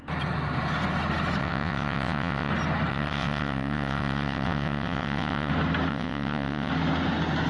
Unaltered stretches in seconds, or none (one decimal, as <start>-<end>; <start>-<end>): 0.0-1.4; 2.5-2.9; 5.5-5.9; 6.7-7.5